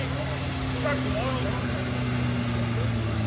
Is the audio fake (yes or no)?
no